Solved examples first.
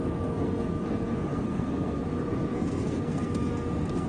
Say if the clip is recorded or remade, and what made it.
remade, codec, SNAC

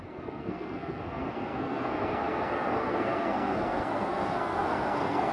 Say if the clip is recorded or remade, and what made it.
remade, codec, SNAC